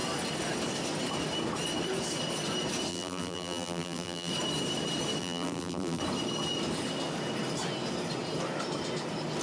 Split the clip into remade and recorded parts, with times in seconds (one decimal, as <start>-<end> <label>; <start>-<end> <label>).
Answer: 0.0-2.9 recorded; 2.9-4.3 remade; 4.3-5.2 recorded; 5.2-6.0 remade; 6.0-9.4 recorded